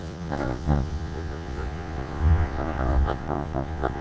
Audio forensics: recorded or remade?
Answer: remade